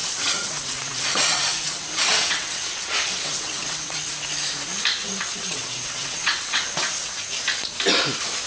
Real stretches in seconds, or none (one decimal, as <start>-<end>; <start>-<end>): 4.0-5.0; 7.3-8.5